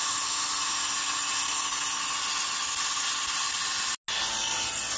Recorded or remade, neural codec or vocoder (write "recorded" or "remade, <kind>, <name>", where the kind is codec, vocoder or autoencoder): recorded